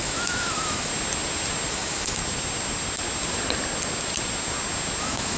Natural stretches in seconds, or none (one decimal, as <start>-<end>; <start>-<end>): 0.9-1.7; 2.2-5.0